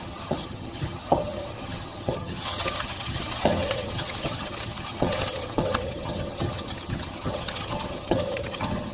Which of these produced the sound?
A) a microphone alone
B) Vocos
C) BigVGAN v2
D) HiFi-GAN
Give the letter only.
D